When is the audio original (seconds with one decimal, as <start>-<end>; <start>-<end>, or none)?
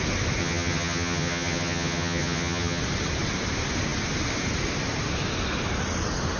0.0-0.4; 2.8-6.4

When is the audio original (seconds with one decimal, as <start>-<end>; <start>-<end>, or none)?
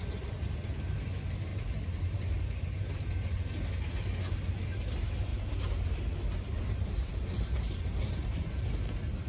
0.0-1.5; 3.0-5.3; 8.7-9.3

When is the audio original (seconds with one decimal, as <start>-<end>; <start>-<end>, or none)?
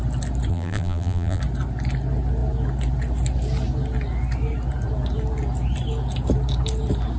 0.0-0.5; 1.4-7.2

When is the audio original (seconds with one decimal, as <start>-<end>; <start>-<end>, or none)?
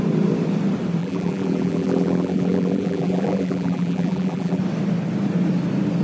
0.0-1.0; 4.6-6.0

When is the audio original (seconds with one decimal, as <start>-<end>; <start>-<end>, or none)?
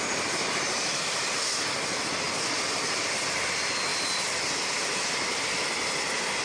0.0-6.4